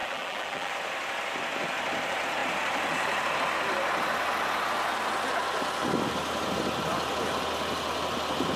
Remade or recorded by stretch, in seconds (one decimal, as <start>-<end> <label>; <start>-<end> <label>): 0.0-0.7 remade; 0.7-8.6 recorded